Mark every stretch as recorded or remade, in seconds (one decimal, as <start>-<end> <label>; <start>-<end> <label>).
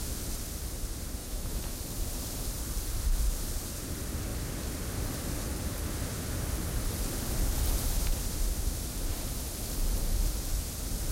0.0-1.2 recorded; 1.2-1.8 remade; 1.8-11.1 recorded